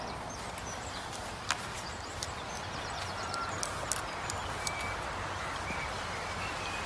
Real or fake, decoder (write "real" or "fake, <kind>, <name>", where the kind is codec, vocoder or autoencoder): real